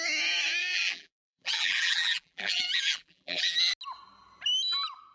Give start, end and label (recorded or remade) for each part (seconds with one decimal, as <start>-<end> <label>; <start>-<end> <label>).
0.0-0.6 recorded; 0.6-3.7 remade; 3.7-5.1 recorded